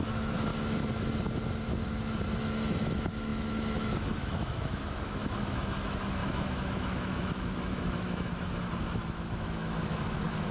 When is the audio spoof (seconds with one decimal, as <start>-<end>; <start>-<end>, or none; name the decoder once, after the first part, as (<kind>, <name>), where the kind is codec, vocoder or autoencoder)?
0.0-0.5 (autoencoder, DAC-VAE); 2.4-10.5